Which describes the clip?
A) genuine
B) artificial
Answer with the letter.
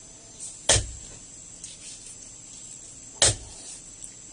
A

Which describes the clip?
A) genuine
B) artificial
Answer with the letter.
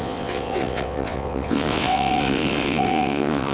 B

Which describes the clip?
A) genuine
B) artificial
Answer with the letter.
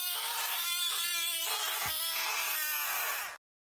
A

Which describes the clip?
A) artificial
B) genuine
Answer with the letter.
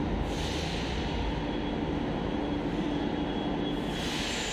B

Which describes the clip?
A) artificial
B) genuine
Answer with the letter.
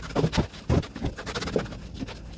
B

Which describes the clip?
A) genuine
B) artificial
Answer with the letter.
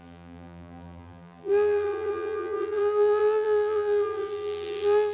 B